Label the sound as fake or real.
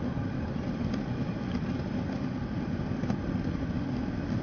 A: real